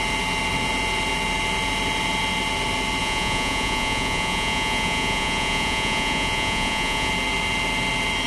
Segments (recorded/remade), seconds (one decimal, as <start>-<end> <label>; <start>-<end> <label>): 0.0-3.0 recorded; 3.0-7.1 remade; 7.1-8.3 recorded